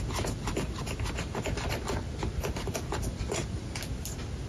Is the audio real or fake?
real